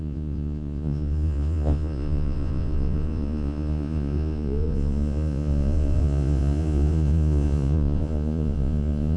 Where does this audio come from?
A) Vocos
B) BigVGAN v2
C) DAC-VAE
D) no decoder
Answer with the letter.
A